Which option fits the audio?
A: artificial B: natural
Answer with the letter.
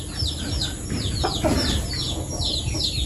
B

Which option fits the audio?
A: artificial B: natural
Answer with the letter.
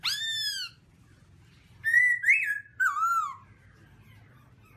B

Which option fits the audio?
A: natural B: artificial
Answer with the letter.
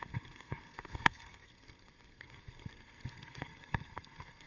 B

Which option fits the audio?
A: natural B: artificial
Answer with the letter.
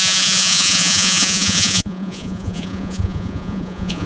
B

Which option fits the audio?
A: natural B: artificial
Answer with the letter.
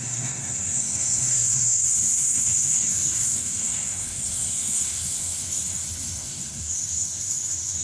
B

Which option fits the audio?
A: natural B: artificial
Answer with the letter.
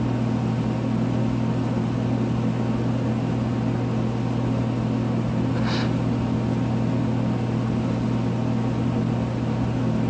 A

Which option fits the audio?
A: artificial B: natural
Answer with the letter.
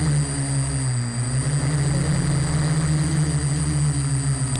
B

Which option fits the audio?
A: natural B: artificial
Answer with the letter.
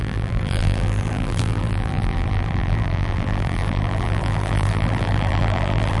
B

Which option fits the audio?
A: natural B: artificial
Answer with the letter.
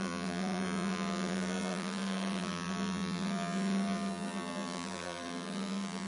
B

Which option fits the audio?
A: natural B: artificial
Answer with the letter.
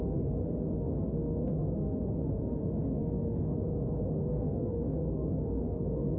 B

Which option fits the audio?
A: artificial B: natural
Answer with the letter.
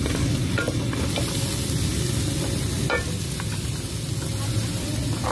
B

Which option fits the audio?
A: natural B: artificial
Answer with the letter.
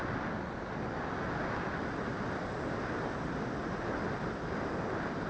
A